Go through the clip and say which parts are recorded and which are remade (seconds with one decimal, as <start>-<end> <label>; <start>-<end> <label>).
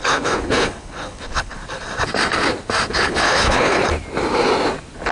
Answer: 0.0-1.6 remade; 1.6-2.9 recorded; 2.9-3.8 remade; 3.8-5.1 recorded